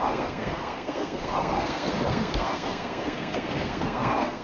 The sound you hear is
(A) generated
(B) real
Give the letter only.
A